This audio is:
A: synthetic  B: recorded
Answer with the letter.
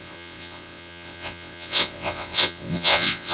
A